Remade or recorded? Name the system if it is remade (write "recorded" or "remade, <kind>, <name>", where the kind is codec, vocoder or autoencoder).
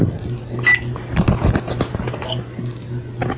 recorded